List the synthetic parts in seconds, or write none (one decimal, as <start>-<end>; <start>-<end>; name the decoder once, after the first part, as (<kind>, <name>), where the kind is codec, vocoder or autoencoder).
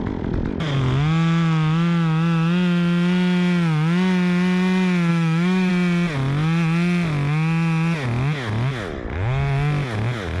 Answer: 5.1-5.7 (autoencoder, DAC-VAE)